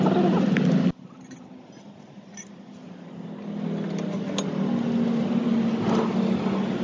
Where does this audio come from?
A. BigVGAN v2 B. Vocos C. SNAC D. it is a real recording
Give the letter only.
D